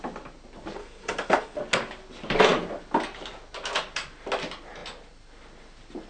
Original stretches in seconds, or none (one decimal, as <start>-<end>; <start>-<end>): 0.0-0.8; 1.6-6.1